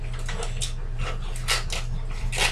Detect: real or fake real